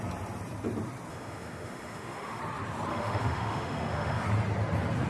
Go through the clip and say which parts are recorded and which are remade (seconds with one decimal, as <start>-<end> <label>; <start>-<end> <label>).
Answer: 0.0-1.1 recorded; 1.1-2.4 remade; 2.4-2.9 recorded; 2.9-4.2 remade; 4.2-5.1 recorded